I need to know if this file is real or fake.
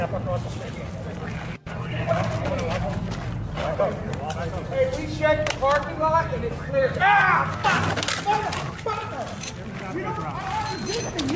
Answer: real